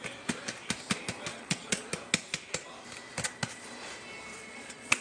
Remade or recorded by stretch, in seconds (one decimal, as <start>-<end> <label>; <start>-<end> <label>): 0.0-1.3 recorded; 1.3-1.9 remade; 1.9-4.3 recorded; 4.3-5.0 remade